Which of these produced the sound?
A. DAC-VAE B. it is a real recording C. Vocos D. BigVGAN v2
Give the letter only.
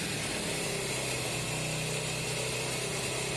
B